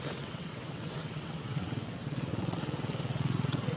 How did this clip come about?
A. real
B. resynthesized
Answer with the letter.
B